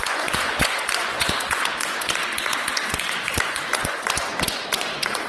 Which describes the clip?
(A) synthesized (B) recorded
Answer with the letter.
A